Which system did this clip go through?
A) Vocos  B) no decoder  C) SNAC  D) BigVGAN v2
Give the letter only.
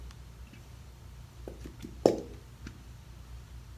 B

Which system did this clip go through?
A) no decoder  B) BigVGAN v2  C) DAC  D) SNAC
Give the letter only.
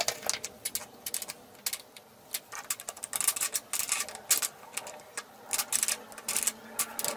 A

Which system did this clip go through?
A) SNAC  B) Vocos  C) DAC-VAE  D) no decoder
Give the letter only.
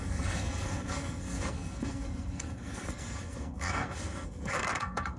A